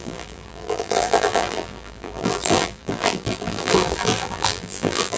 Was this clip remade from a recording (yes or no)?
yes